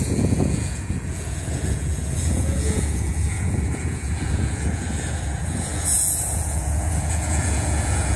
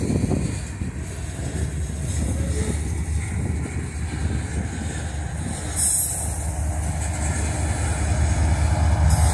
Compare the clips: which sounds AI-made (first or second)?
first